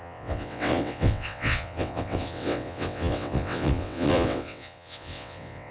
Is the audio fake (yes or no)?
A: yes